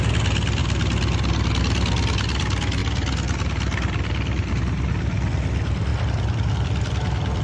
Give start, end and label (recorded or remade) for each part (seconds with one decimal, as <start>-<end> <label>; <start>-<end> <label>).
0.0-7.4 recorded